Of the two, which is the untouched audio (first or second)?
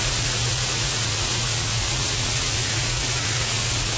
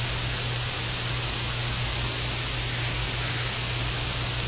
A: second